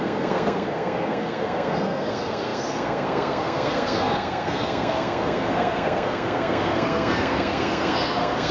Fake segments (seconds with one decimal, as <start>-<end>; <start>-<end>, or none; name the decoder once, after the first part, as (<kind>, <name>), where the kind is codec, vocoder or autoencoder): 0.0-8.5 (codec, SNAC)